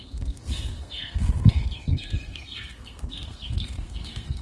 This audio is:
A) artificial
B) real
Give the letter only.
A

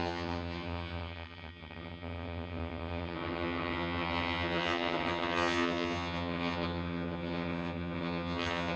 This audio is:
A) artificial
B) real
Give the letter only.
A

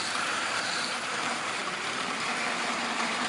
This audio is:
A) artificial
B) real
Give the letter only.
A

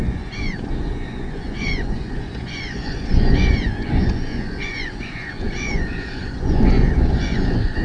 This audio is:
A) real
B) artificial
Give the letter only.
B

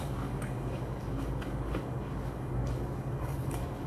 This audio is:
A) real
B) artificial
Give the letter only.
B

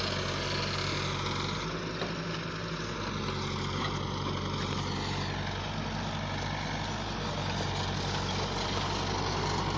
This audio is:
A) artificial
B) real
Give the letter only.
B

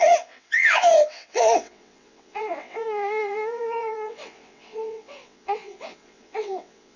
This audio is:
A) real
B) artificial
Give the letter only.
B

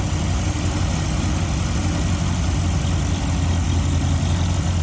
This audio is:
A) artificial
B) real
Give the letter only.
B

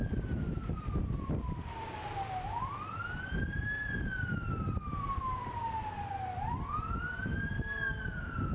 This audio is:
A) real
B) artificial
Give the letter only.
A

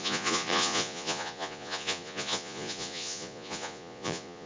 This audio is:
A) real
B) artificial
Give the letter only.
B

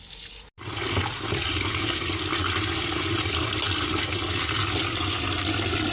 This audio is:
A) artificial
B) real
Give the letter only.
B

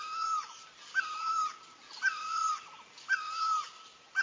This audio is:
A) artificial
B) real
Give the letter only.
B